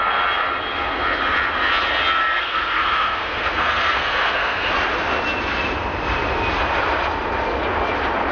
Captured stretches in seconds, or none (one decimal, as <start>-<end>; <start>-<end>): 0.0-2.2; 4.7-8.3